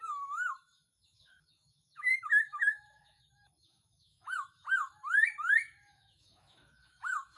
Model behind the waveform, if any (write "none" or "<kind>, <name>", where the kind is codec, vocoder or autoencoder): autoencoder, DAC-VAE